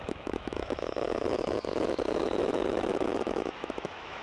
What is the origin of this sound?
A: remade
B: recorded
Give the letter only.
A